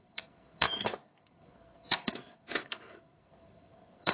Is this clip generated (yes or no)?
yes